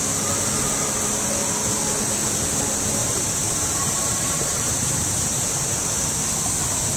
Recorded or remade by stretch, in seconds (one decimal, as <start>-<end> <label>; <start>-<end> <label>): 0.0-3.0 recorded; 3.0-6.1 remade; 6.1-7.0 recorded